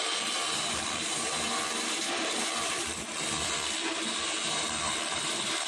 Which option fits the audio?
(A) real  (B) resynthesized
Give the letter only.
B